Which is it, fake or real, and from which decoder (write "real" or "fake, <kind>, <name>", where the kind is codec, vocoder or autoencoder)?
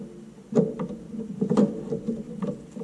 fake, vocoder, BigVGAN v2